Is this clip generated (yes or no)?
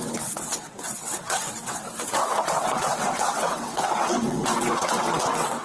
yes